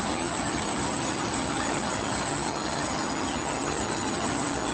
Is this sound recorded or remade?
remade